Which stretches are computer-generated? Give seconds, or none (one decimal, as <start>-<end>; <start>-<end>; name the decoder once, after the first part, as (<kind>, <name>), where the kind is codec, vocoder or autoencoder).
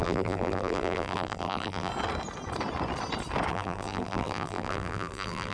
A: 0.0-1.9 (vocoder, BigVGAN v2); 3.5-5.5